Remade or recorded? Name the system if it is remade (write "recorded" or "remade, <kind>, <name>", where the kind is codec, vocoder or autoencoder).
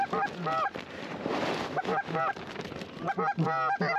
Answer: recorded